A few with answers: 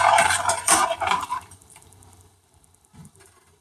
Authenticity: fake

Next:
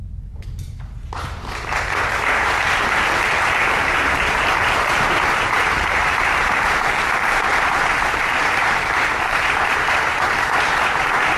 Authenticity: fake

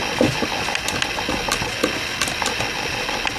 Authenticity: real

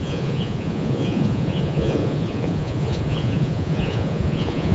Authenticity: fake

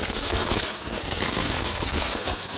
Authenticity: fake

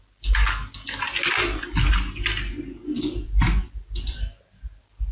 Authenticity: real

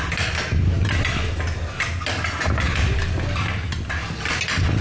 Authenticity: real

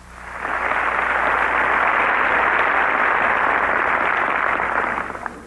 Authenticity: real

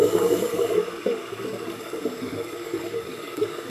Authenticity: fake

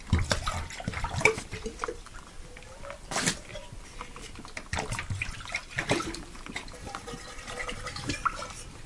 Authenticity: fake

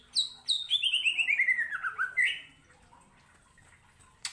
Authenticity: real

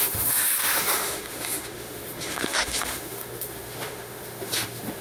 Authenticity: fake